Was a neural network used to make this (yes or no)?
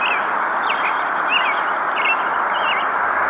no